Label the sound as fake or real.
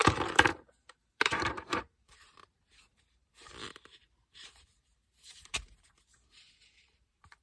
fake